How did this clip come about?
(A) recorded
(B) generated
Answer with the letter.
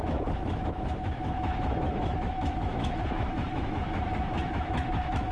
B